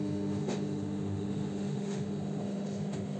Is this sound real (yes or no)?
no